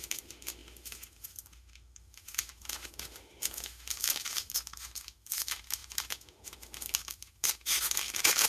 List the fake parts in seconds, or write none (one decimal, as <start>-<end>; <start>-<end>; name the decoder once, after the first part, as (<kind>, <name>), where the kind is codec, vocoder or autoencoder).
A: 0.0-8.5 (autoencoder, DAC-VAE)